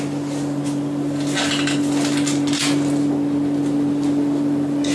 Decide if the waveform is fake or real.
real